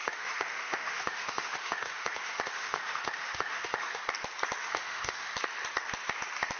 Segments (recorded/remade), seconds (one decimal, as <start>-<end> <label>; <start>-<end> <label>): 0.0-4.0 remade; 4.0-4.6 recorded; 4.6-5.3 remade; 5.3-6.6 recorded